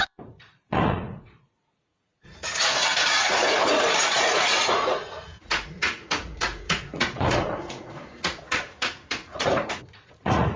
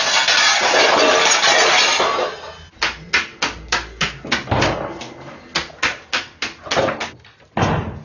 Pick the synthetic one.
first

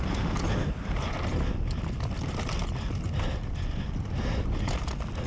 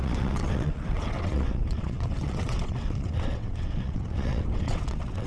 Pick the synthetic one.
second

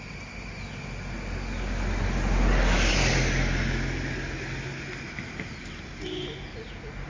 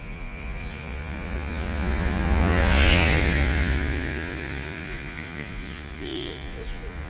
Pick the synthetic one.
second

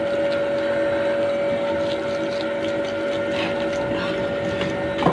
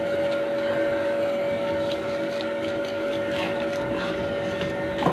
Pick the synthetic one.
second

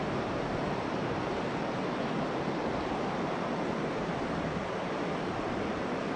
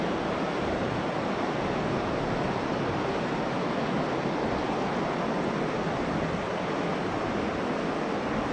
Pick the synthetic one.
first